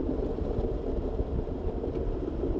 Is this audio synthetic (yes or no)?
no